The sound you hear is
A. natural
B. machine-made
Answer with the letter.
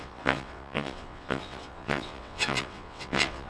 B